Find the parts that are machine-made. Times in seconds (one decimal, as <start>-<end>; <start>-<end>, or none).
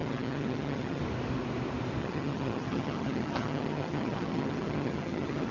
0.0-1.0; 2.0-5.5